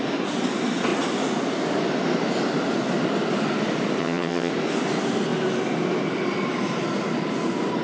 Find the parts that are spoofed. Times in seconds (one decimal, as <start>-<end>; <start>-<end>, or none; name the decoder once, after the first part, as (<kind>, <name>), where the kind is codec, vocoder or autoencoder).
4.0-4.5 (vocoder, HiFi-GAN)